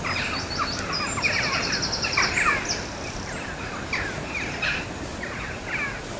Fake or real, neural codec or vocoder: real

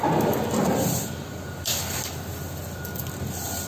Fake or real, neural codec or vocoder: real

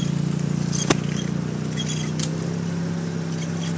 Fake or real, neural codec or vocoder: real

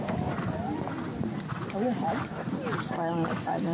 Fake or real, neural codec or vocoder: fake, vocoder, BigVGAN v2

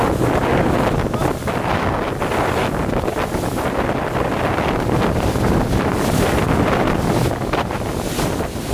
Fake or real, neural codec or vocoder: real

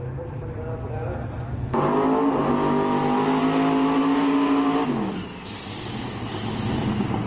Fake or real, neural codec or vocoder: real